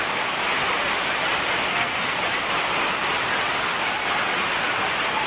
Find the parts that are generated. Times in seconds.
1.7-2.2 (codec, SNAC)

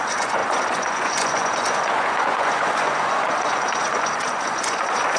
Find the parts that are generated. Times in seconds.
0.0-5.2 (vocoder, Vocos)

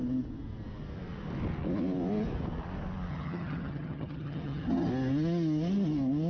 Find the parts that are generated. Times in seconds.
3.1-4.9 (vocoder, HiFi-GAN)

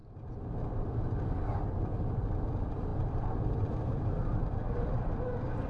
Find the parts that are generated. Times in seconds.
none

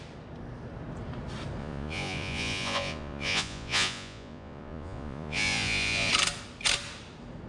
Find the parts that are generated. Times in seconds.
1.6-6.1 (vocoder, Vocos)

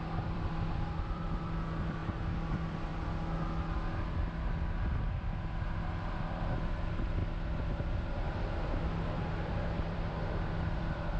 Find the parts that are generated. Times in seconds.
0.0-2.0 (vocoder, BigVGAN v2); 2.5-2.9; 5.0-7.2; 7.9-11.2

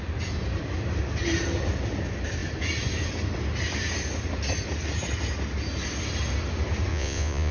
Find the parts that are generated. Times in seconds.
6.9-7.5 (vocoder, Vocos)